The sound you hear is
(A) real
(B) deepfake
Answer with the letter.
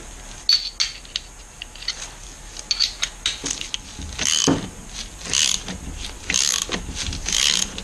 A